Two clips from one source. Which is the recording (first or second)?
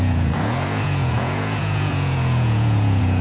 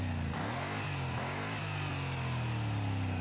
second